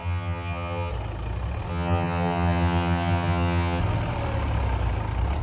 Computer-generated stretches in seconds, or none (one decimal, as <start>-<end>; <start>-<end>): 0.0-0.9; 1.7-3.8